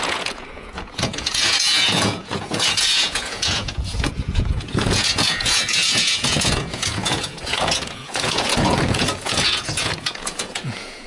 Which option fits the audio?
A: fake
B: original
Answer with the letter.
A